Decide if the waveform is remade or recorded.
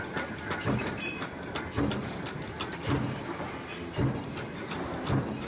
recorded